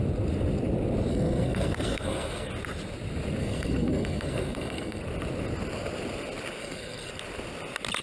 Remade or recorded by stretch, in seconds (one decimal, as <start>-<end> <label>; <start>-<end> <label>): 0.0-1.1 recorded; 1.1-2.5 remade; 2.5-3.4 recorded; 3.4-5.0 remade; 5.0-6.6 recorded; 6.6-7.1 remade; 7.1-8.0 recorded